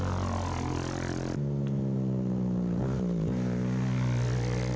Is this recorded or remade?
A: recorded